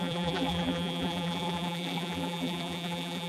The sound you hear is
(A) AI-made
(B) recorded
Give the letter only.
A